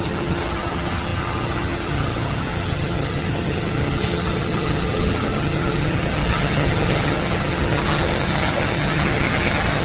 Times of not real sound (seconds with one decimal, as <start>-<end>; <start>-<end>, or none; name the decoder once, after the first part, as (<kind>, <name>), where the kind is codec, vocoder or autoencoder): 0.0-9.8 (vocoder, HiFi-GAN)